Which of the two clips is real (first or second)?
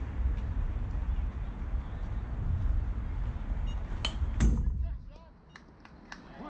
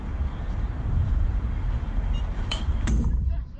first